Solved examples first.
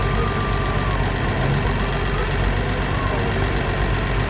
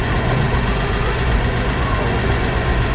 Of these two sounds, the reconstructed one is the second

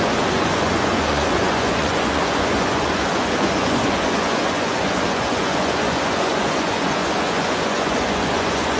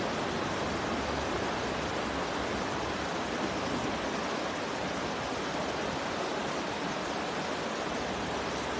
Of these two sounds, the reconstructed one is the first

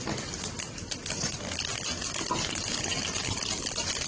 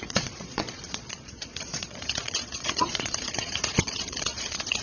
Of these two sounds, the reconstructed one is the second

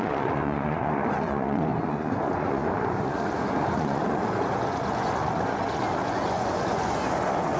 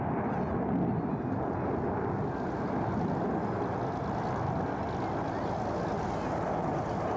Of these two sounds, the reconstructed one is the first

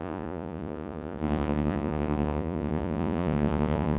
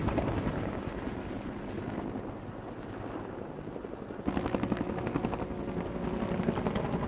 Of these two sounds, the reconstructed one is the first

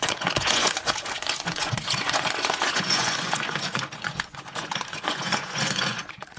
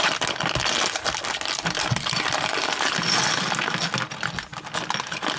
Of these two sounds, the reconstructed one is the first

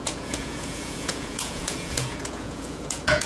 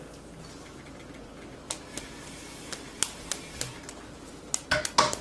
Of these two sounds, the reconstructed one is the first